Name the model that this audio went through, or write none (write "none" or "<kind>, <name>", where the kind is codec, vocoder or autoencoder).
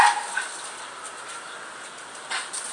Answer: none